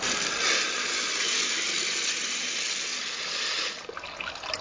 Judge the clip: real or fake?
real